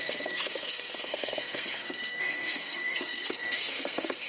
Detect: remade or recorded remade